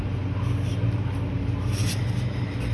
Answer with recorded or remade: recorded